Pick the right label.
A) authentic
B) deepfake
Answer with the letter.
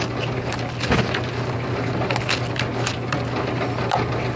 A